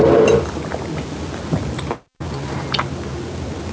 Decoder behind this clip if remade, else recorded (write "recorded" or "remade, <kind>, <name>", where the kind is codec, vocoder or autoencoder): recorded